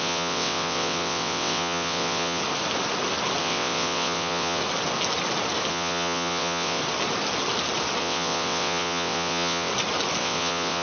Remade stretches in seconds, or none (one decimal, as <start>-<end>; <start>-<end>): 0.0-2.4; 3.4-4.6; 5.7-6.8; 8.0-9.7; 10.2-10.8